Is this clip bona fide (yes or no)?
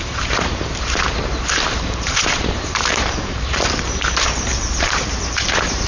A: no